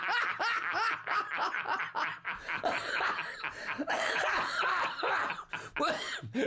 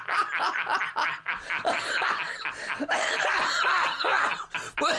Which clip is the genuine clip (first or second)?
second